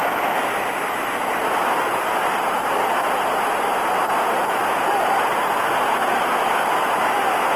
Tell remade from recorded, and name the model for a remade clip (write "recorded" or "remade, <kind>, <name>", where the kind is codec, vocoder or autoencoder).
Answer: recorded